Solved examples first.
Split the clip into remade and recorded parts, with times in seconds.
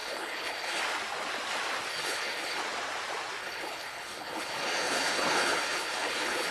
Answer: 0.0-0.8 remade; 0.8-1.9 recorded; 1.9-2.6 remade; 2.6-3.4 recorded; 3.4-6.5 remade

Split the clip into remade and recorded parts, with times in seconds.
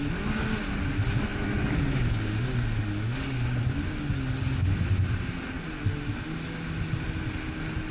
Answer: 0.0-7.9 recorded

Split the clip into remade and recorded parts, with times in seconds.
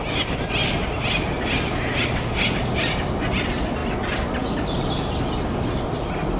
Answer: 0.0-6.4 recorded